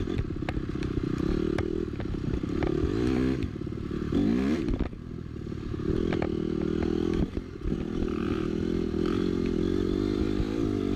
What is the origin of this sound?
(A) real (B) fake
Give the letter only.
B